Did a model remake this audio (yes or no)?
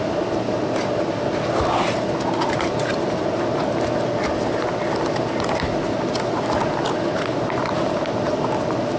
no